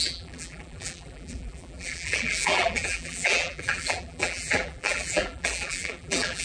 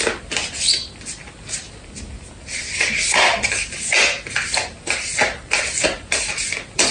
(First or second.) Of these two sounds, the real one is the second